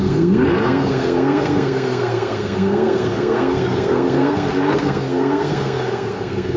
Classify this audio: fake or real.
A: fake